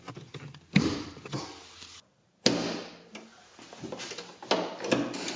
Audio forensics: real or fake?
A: real